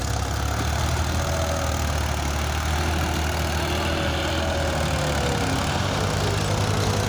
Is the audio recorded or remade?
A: recorded